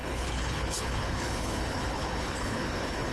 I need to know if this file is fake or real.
fake